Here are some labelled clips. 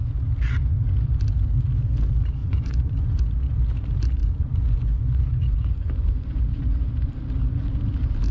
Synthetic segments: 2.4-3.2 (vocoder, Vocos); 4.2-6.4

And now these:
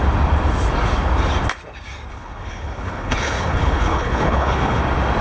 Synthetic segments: 2.1-4.8 (codec, HILCodec)

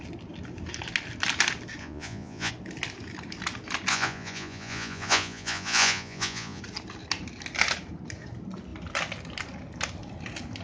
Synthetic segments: 1.8-2.5 (vocoder, Vocos); 3.9-6.6

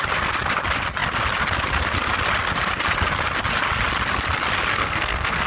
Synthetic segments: 4.7-5.5 (codec, SNAC)

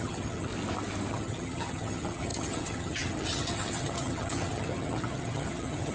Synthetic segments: 0.0-0.5 (vocoder, HiFi-GAN); 1.1-5.9